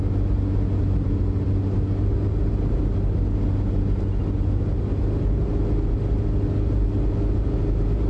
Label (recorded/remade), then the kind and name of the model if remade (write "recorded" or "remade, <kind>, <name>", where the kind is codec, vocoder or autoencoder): recorded